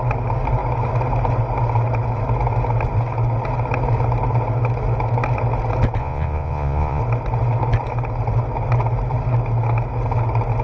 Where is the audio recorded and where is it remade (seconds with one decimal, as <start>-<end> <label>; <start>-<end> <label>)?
0.0-6.0 recorded; 6.0-7.0 remade; 7.0-10.6 recorded